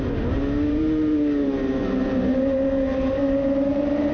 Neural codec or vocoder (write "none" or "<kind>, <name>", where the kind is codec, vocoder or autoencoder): vocoder, BigVGAN v2